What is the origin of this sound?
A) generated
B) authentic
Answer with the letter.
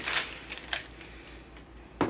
B